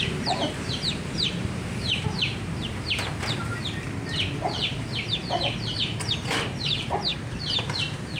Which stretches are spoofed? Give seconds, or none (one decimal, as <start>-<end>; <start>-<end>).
0.0-3.6; 4.4-8.2